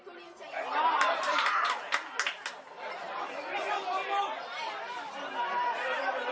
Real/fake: real